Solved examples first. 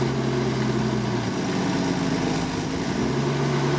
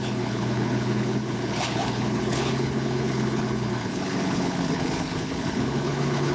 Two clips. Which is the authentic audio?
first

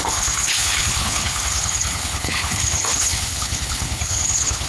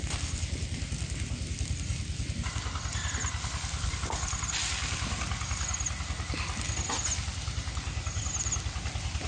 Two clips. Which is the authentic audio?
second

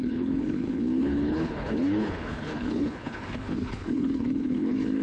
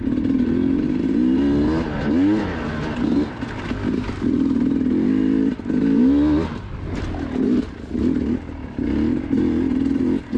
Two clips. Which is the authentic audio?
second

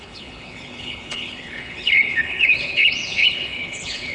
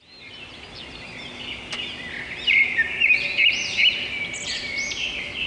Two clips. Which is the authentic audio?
second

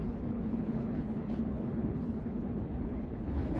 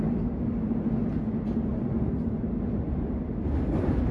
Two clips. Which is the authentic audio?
second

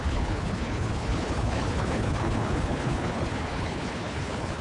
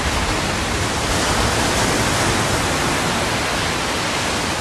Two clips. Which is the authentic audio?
second